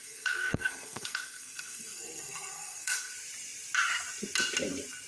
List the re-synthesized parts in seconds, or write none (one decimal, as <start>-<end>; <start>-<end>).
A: 0.0-3.1